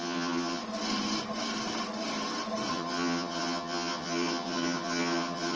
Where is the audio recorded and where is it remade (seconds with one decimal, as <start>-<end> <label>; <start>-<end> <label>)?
0.0-0.6 remade; 0.6-2.7 recorded; 2.7-5.6 remade